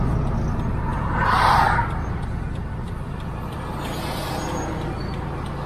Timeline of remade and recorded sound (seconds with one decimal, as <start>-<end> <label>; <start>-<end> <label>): 0.0-0.9 recorded; 0.9-4.3 remade; 4.3-5.7 recorded